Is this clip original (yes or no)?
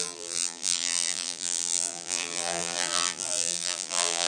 no